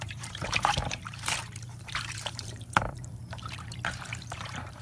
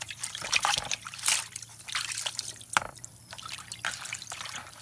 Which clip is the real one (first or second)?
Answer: second